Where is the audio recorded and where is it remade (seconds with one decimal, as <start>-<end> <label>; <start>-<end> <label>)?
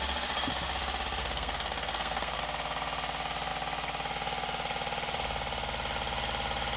0.0-1.2 recorded; 1.2-2.4 remade; 2.4-6.8 recorded